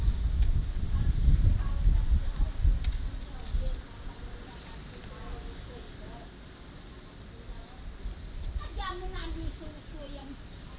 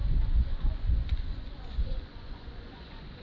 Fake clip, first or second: second